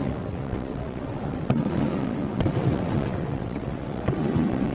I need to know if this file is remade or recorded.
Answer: remade